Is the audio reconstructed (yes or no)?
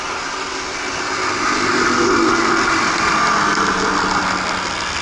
no